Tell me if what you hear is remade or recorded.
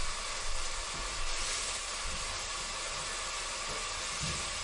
recorded